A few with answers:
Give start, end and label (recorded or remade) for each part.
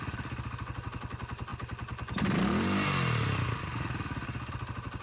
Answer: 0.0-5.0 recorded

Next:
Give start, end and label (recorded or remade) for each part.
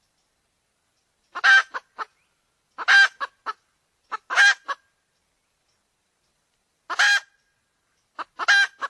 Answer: 0.0-8.9 recorded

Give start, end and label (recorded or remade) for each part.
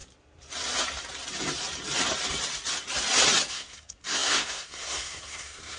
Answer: 0.0-3.5 recorded; 3.5-5.8 remade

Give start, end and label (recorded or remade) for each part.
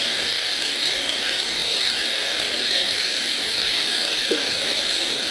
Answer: 0.0-5.3 remade